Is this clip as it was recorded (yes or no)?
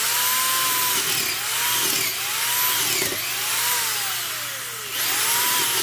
yes